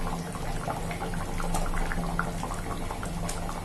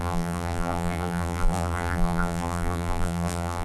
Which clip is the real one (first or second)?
first